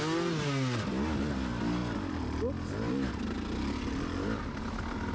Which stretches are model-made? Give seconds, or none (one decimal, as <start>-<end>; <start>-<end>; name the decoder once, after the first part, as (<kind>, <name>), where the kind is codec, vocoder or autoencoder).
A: none